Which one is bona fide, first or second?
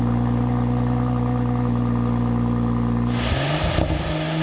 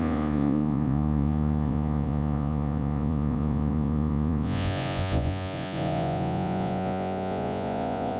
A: first